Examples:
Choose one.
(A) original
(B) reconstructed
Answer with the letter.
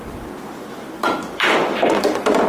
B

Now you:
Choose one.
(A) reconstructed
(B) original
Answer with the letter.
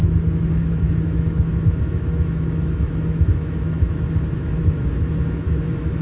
A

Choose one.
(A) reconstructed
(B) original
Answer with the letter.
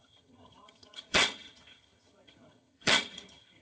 A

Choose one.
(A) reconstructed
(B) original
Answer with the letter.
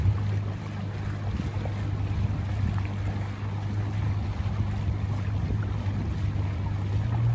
B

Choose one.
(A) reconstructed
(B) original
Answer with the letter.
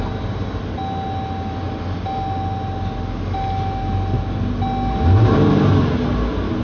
B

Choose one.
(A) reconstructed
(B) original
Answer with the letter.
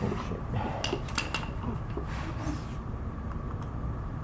B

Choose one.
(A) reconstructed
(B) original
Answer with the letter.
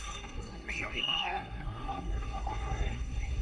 A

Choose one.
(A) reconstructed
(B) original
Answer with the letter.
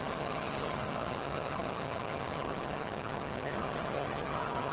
A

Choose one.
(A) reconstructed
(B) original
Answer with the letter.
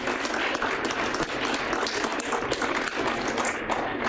B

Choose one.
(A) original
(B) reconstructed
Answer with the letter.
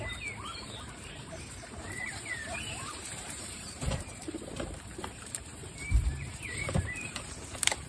B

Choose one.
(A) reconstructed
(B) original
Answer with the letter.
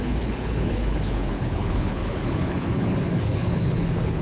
A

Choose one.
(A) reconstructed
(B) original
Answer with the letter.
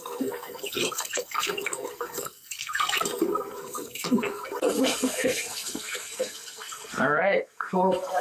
A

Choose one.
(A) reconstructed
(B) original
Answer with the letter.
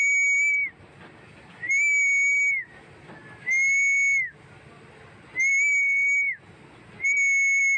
B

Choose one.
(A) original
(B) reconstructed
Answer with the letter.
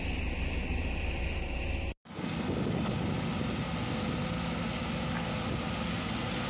A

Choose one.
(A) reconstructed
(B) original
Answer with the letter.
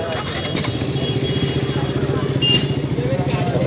B